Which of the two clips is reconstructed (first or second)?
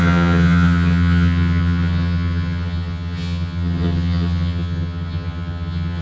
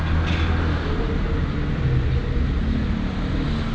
first